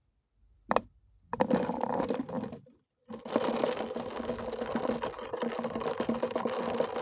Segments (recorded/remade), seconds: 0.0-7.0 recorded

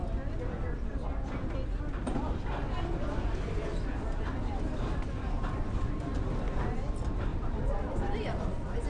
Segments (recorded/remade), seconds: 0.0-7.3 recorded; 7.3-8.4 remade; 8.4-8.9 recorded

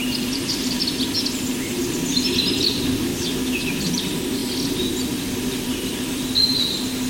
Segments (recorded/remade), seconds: 0.0-3.1 recorded; 3.1-3.8 remade; 3.8-7.1 recorded